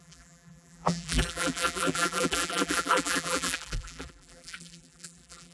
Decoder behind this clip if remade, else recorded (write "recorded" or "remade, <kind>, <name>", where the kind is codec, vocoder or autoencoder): remade, vocoder, BigVGAN v2